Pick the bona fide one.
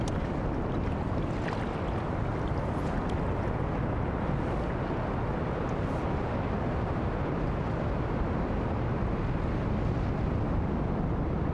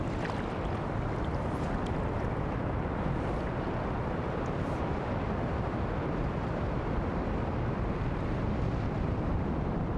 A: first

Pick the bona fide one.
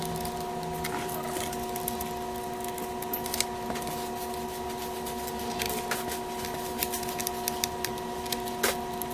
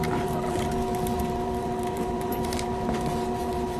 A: first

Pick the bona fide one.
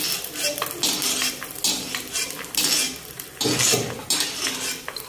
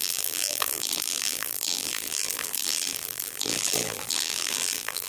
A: first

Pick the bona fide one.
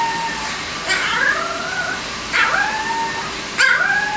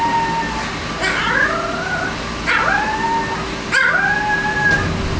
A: second